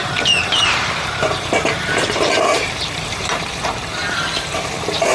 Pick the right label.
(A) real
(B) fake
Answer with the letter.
B